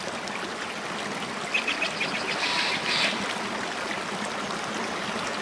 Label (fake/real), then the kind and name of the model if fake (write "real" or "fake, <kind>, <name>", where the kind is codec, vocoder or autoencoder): real